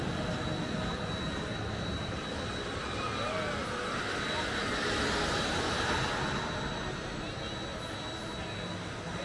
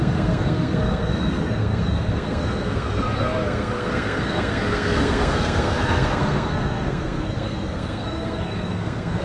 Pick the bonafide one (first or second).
first